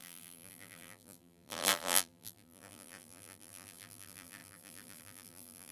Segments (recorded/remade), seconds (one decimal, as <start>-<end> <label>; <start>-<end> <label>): 0.0-5.7 remade